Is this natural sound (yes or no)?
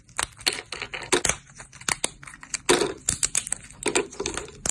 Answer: yes